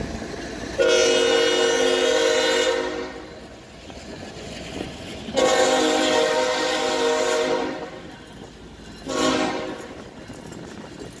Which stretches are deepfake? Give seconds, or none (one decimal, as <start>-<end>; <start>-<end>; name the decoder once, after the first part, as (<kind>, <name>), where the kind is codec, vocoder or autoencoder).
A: 3.5-5.2 (vocoder, Vocos)